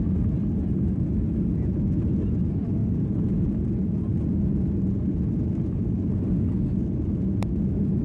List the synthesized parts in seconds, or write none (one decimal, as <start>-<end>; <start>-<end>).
none